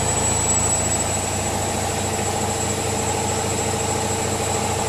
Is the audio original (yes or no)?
yes